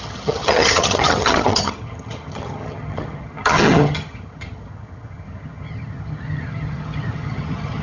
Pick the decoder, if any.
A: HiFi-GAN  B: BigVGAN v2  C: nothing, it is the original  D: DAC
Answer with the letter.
A